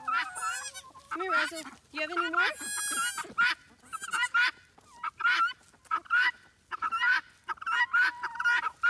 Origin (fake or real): real